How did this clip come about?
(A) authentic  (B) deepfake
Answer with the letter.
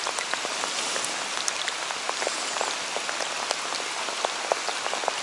A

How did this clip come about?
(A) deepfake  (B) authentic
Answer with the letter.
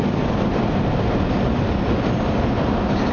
B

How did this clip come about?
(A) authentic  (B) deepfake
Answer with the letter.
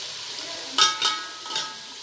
A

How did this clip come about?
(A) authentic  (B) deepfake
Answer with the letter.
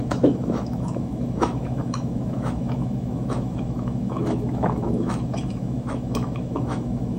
B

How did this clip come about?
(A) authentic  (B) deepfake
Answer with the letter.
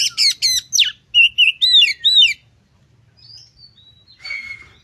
A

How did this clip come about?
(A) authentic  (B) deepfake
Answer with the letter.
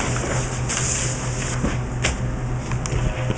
A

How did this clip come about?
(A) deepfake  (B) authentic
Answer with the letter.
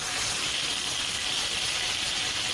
B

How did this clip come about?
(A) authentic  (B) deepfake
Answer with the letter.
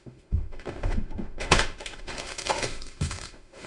B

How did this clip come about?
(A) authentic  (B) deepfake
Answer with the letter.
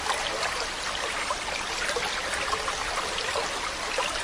A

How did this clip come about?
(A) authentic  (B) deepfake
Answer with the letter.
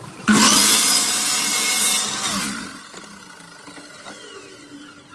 A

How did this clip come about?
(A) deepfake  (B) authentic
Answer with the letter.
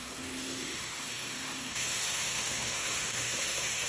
A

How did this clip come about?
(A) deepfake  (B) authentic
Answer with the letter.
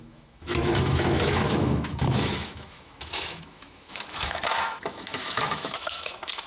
A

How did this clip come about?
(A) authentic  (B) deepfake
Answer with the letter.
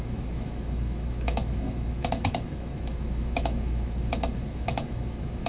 B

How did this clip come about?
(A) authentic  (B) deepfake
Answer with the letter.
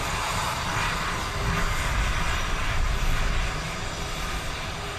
A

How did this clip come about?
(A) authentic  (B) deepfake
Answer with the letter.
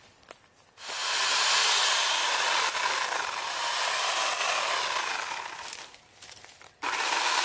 A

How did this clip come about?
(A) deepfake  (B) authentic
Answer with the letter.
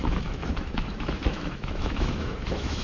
A